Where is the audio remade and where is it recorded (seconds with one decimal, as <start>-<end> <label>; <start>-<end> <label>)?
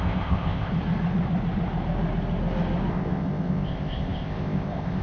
0.0-0.7 remade; 0.7-2.9 recorded; 2.9-5.0 remade